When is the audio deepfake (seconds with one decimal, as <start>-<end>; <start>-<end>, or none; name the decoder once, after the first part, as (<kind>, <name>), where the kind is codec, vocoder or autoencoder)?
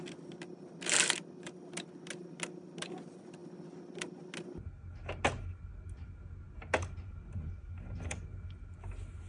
none